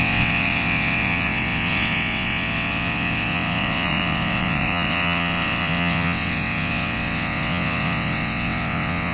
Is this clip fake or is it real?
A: fake